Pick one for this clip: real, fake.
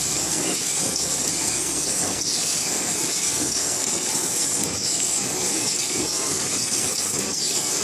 fake